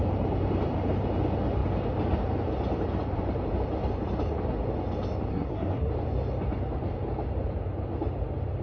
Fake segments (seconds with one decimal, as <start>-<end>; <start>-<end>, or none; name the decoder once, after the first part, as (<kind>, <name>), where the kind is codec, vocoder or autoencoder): 5.3-5.9 (codec, SNAC)